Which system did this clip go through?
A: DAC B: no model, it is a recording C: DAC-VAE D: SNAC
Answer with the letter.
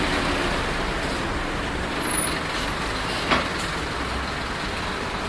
B